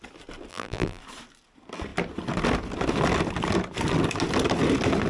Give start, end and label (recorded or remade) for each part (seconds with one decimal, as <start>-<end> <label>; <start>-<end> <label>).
0.0-0.5 recorded; 0.5-1.0 remade; 1.0-5.1 recorded